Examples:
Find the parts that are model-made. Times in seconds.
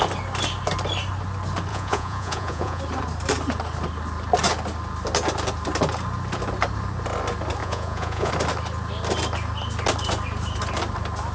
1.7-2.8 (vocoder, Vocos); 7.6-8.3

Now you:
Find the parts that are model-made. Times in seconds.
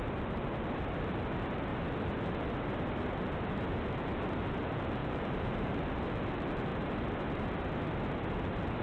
5.0-5.8 (vocoder, BigVGAN v2)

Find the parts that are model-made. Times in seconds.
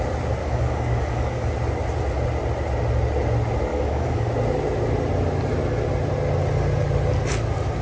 0.4-1.5 (codec, DAC); 3.7-4.3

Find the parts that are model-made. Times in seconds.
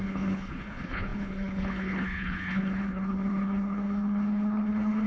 0.0-5.1 (codec, HILCodec)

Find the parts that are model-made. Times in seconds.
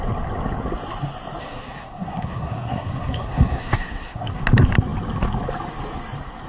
1.4-4.4 (codec, SNAC)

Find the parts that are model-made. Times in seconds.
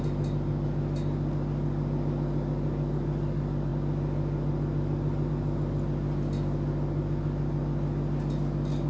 none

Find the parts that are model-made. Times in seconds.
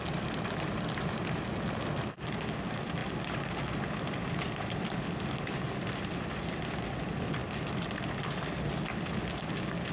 none